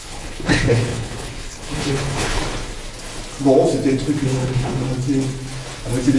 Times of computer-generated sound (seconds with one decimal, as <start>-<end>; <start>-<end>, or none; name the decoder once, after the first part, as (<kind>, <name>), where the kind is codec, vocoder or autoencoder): 0.0-2.4 (codec, HILCodec); 4.2-4.8